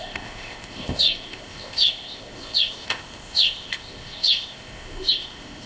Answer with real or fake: fake